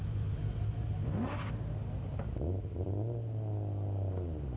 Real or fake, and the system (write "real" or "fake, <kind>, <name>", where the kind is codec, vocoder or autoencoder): real